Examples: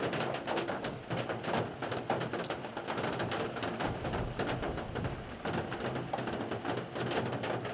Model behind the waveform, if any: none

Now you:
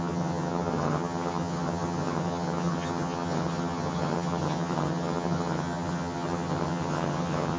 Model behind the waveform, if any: vocoder, HiFi-GAN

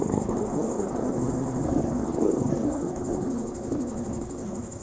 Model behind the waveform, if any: codec, SNAC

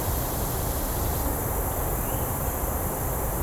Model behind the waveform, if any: none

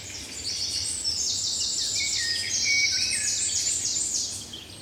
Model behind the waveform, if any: none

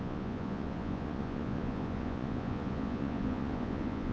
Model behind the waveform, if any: vocoder, Vocos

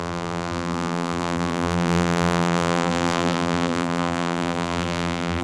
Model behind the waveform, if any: vocoder, BigVGAN v2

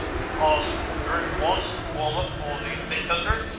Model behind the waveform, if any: none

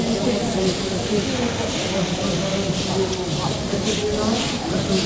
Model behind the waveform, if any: none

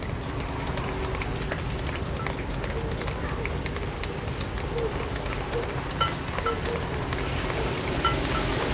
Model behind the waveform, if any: none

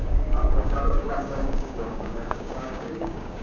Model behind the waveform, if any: codec, DAC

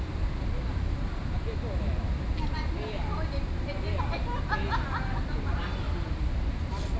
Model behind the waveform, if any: none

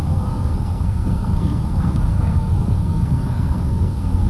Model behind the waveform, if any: codec, SNAC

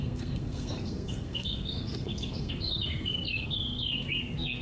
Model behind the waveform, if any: codec, SNAC